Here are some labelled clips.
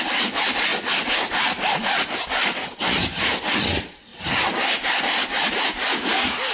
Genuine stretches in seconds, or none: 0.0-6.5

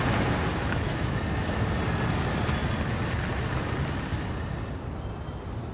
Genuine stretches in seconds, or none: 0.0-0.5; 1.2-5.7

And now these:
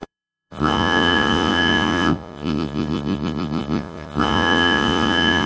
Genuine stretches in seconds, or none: none

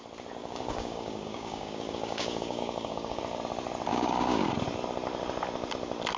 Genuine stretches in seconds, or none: 0.0-0.4; 3.2-3.9; 4.5-6.2

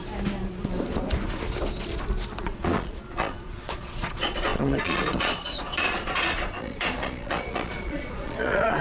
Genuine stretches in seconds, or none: 0.0-2.4

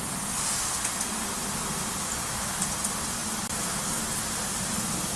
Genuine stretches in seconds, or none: 0.0-5.2